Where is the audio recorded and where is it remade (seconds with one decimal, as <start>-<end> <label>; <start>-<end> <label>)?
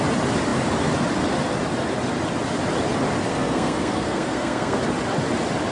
0.0-3.3 recorded; 3.3-4.8 remade; 4.8-5.7 recorded